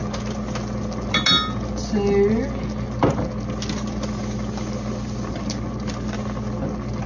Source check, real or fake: real